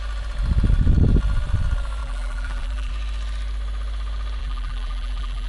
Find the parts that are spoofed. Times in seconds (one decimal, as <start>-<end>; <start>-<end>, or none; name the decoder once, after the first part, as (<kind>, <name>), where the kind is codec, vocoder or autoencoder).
2.0-2.9 (vocoder, BigVGAN v2); 4.4-5.5